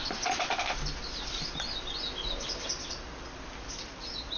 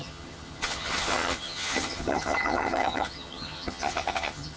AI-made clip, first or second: second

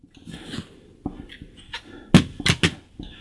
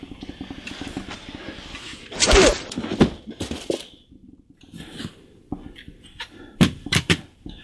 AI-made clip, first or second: second